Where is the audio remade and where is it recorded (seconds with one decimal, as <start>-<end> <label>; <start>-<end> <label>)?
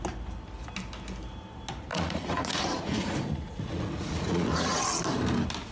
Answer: 0.0-1.9 recorded; 1.9-4.8 remade; 4.8-5.7 recorded